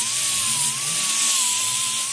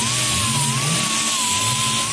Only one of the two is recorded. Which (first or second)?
second